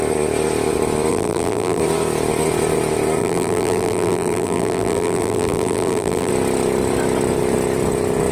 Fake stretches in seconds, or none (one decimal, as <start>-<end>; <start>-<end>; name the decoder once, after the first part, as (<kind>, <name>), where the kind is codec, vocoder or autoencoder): 1.1-1.8 (vocoder, BigVGAN v2); 3.2-6.3